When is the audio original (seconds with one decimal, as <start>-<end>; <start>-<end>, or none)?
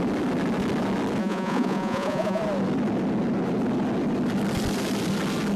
0.0-1.2; 2.4-5.6